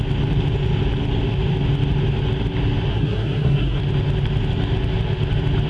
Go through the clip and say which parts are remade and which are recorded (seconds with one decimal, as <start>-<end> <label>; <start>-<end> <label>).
0.0-2.9 recorded; 2.9-3.8 remade; 3.8-5.7 recorded